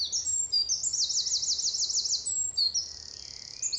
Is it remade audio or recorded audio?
recorded